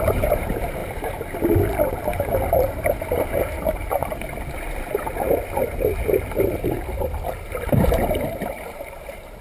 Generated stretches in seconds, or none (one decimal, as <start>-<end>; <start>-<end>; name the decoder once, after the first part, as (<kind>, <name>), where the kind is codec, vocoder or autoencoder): 0.0-0.8 (vocoder, BigVGAN v2); 3.4-4.0; 8.5-9.4